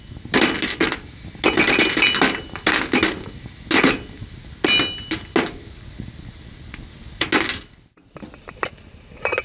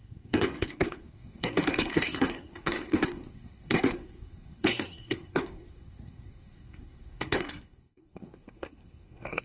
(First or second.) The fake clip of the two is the second